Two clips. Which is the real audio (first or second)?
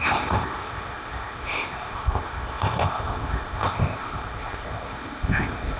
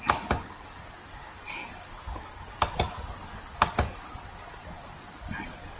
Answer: second